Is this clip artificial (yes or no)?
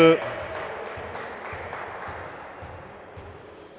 no